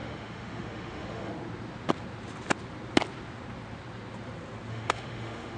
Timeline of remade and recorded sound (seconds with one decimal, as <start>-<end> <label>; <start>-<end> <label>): 0.0-1.3 remade; 1.3-4.7 recorded; 4.7-5.6 remade